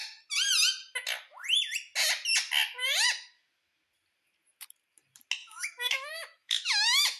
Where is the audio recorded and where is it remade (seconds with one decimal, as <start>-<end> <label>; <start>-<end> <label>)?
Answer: 0.0-5.4 recorded; 5.4-7.2 remade